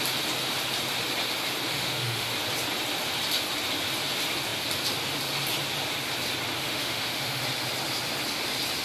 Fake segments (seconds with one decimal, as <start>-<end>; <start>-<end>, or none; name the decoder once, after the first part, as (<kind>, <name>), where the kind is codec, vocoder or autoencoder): 1.7-2.3 (autoencoder, DAC-VAE); 6.6-7.4